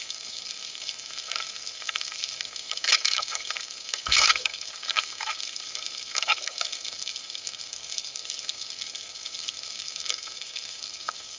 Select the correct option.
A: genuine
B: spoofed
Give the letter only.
B